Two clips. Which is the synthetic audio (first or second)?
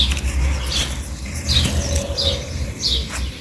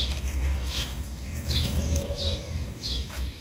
second